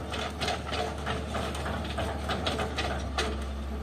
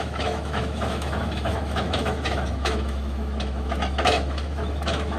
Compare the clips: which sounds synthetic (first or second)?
second